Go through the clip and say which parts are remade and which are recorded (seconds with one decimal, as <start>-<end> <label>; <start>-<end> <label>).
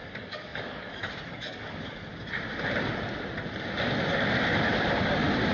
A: 0.0-2.1 remade; 2.1-5.5 recorded